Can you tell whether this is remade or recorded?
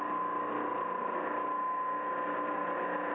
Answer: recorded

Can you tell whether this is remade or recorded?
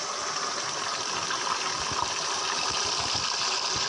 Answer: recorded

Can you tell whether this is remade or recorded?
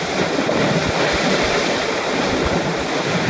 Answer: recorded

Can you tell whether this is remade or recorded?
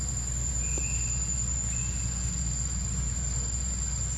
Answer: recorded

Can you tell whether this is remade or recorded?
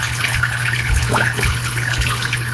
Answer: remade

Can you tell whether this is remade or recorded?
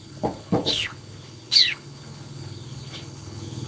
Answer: remade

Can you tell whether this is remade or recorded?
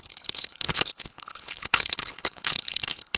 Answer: remade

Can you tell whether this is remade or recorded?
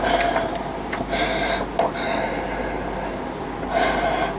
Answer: recorded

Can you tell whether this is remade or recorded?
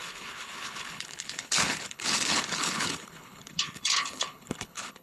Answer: remade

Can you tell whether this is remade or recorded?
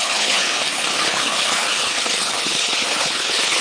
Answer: remade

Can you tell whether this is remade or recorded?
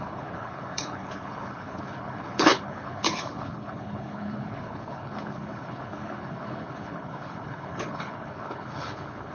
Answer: remade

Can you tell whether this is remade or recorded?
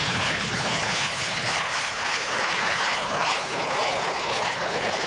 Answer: remade